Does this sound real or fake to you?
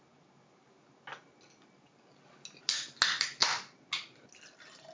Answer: real